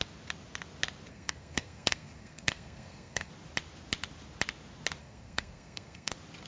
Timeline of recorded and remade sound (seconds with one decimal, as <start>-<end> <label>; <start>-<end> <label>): 0.0-1.1 recorded; 1.1-3.3 remade; 3.3-5.0 recorded; 5.0-6.1 remade; 6.1-6.5 recorded